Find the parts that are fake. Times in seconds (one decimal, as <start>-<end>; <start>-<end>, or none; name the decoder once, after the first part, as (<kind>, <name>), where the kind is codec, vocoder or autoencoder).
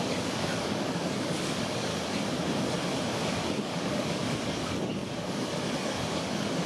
0.0-1.9 (codec, DAC); 3.1-6.7